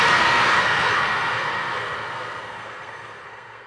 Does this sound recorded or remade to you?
remade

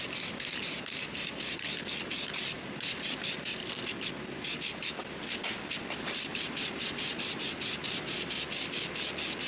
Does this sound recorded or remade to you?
remade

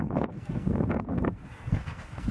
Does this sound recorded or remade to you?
remade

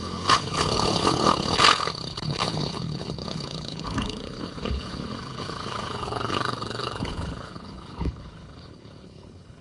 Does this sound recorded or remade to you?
remade